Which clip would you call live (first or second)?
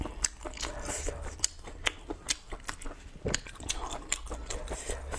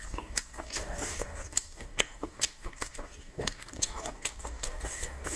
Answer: first